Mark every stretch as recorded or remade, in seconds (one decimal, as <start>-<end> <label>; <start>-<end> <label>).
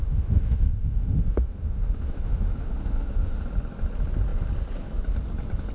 0.0-3.4 remade; 3.4-5.7 recorded